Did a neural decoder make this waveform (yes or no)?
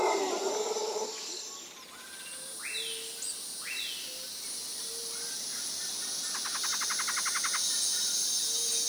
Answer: no